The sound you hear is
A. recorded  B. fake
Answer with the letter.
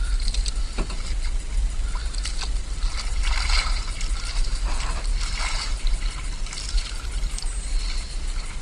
A